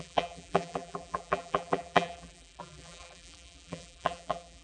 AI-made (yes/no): yes